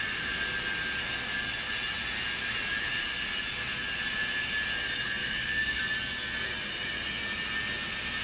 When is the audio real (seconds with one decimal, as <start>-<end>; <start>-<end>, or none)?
0.0-5.2; 5.8-8.2